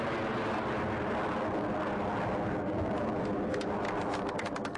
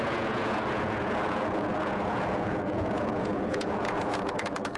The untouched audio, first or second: first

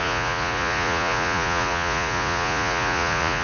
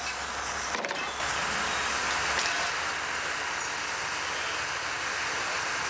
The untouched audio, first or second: second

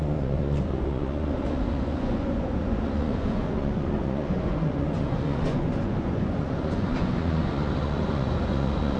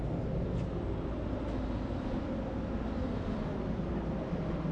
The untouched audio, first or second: second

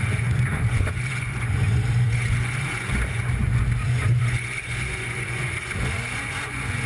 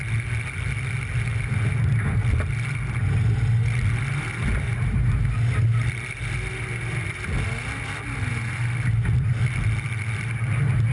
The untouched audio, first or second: second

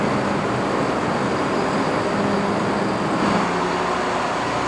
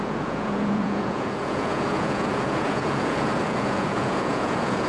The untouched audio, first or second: first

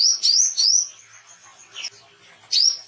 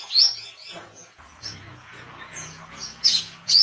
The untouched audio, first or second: first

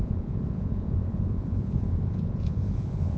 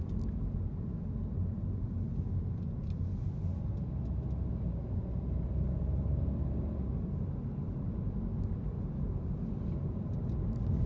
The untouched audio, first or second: second